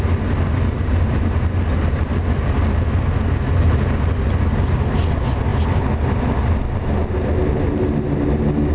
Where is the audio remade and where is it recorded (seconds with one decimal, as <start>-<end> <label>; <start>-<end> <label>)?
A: 0.0-8.7 recorded